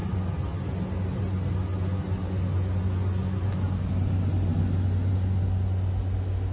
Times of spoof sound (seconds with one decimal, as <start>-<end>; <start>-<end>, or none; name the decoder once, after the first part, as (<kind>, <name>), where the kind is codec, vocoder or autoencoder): none